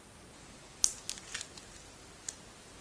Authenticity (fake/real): real